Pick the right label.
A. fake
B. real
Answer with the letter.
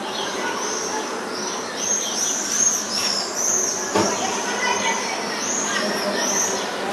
B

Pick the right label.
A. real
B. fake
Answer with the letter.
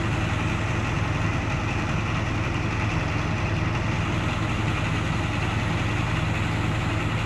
A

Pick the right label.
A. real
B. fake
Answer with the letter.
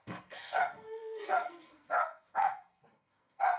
B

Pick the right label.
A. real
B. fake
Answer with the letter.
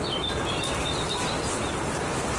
A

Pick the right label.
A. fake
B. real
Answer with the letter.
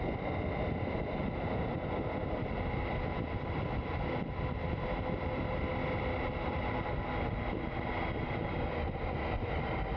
B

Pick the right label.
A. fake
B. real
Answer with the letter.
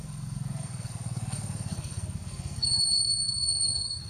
A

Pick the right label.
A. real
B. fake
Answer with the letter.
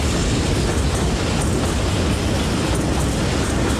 A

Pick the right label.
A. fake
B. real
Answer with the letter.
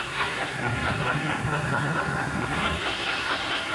A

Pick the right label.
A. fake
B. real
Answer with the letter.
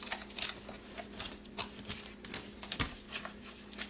B